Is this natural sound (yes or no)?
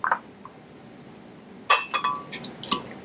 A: yes